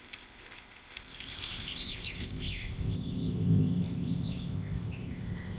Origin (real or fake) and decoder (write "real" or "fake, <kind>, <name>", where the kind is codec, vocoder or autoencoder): fake, codec, ZipCodec